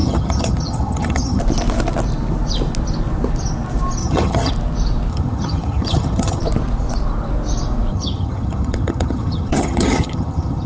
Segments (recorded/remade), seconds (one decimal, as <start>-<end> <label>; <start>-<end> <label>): 0.0-1.4 remade; 1.4-4.0 recorded; 4.0-4.5 remade; 4.5-5.1 recorded; 5.1-6.4 remade; 6.4-7.9 recorded; 7.9-10.7 remade